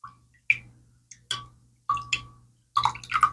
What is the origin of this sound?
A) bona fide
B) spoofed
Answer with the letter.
A